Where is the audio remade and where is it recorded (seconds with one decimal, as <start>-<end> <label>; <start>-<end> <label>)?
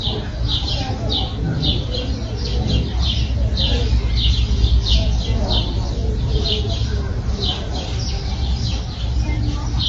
0.0-9.9 recorded